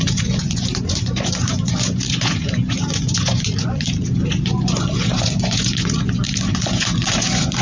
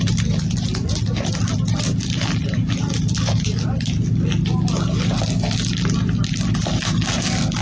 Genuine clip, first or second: second